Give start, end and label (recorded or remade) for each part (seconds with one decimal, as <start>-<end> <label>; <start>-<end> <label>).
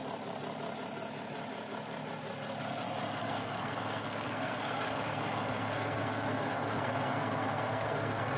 0.0-3.2 recorded; 3.2-8.4 remade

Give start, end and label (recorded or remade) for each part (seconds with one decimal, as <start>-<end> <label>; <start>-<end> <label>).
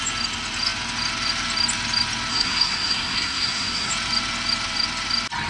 0.0-2.3 recorded; 2.3-3.9 remade; 3.9-5.5 recorded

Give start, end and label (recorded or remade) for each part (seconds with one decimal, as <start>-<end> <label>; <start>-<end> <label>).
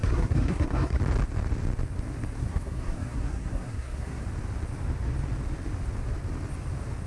0.0-1.0 remade; 1.0-2.4 recorded; 2.4-4.2 remade; 4.2-7.1 recorded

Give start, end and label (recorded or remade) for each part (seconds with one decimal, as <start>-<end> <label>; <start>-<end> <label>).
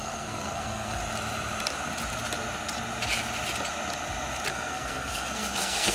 0.0-1.0 remade; 1.0-4.5 recorded; 4.5-5.9 remade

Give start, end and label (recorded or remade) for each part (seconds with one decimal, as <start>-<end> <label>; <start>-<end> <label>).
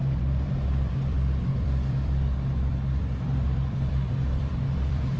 0.0-5.2 remade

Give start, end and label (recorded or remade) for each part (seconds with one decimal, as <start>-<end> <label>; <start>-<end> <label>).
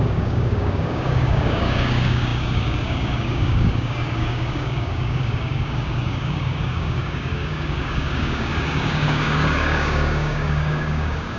0.0-11.4 remade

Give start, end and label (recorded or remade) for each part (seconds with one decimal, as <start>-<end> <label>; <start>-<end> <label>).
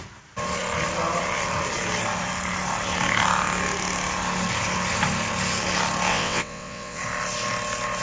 0.0-6.1 recorded; 6.1-7.0 remade; 7.0-8.0 recorded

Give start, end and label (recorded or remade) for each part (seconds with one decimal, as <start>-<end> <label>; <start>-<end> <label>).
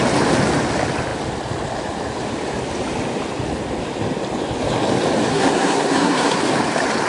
0.0-5.3 recorded; 5.3-6.4 remade; 6.4-7.1 recorded